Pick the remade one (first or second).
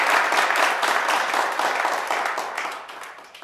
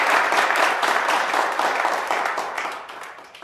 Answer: second